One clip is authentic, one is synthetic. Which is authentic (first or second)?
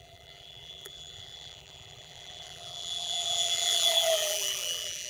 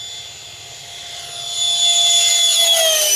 second